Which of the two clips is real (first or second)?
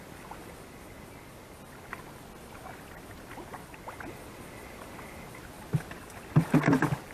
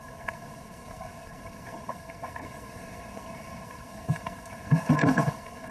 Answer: first